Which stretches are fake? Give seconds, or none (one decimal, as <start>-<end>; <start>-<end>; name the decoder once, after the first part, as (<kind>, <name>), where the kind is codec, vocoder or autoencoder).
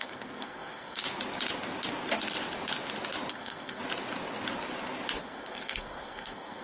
0.0-1.0 (codec, SNAC); 3.3-3.8; 5.2-6.6